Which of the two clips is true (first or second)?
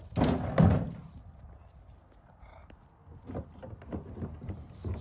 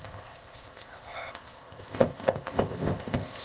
first